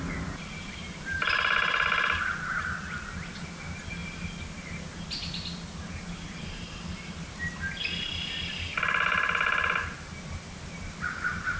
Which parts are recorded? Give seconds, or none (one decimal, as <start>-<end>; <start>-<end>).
0.0-11.6